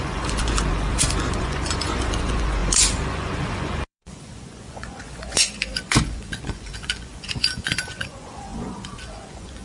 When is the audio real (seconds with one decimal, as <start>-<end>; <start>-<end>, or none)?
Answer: none